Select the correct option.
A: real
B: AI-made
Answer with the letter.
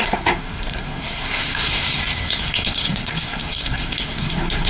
B